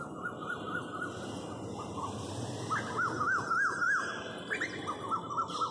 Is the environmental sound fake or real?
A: real